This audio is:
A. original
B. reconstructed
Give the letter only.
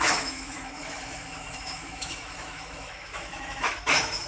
B